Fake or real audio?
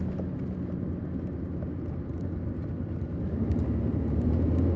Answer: real